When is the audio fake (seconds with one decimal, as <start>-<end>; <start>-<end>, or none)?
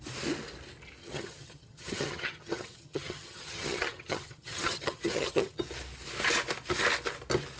1.0-5.6